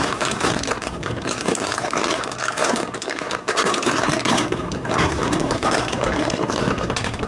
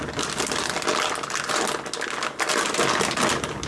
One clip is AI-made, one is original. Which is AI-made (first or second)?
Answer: first